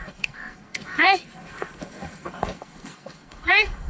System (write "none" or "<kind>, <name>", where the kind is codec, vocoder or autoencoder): codec, SNAC